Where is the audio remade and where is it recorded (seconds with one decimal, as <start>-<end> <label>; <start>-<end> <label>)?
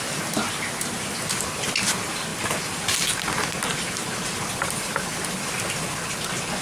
0.0-6.6 recorded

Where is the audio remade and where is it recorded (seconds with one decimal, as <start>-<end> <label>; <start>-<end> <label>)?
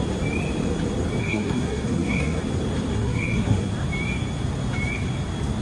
0.0-1.2 recorded; 1.2-2.4 remade; 2.4-2.9 recorded; 2.9-3.7 remade; 3.7-5.6 recorded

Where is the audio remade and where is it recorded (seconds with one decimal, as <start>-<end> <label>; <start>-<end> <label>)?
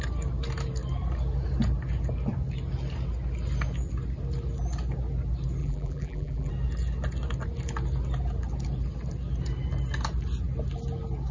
0.0-5.6 recorded; 5.6-6.5 remade; 6.5-11.3 recorded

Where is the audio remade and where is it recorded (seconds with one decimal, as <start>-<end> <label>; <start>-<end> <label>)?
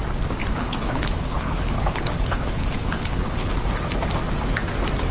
0.0-0.4 recorded; 0.4-3.5 remade; 3.5-5.1 recorded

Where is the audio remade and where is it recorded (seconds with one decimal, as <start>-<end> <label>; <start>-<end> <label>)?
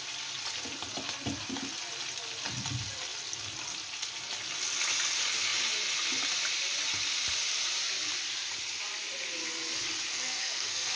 0.0-10.1 recorded; 10.1-11.0 remade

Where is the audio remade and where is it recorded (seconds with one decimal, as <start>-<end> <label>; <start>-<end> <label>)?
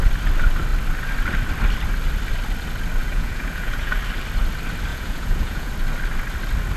0.0-3.0 recorded; 3.0-4.0 remade; 4.0-4.9 recorded; 4.9-5.7 remade; 5.7-6.8 recorded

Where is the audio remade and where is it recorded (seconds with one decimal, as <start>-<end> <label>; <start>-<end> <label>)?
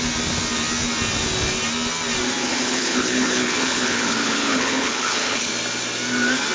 0.0-2.5 recorded; 2.5-5.5 remade; 5.5-6.5 recorded